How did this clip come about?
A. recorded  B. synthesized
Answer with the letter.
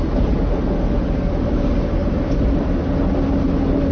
A